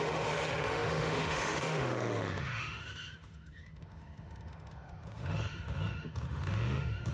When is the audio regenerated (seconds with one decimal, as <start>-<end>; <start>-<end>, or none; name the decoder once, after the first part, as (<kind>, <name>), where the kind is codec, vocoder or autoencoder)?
0.0-7.1 (autoencoder, DAC-VAE)